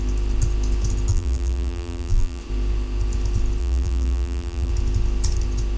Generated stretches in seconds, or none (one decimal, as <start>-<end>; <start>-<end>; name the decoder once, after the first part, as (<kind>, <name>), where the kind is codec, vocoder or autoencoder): 1.1-2.4 (vocoder, BigVGAN v2); 3.6-4.7